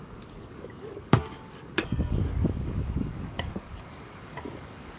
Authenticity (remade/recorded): remade